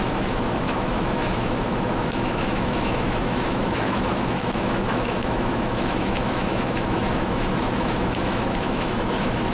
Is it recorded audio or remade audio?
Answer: remade